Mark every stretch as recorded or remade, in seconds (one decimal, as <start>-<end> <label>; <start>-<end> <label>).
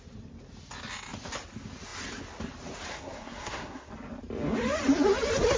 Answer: 0.0-2.9 recorded; 2.9-3.9 remade; 3.9-5.6 recorded